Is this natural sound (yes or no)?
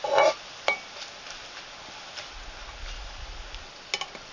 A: yes